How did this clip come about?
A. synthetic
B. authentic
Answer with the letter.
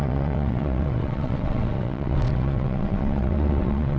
A